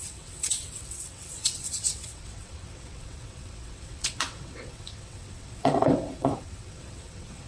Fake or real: fake